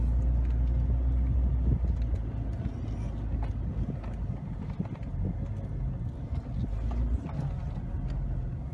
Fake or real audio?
real